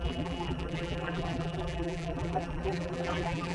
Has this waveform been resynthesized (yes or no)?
yes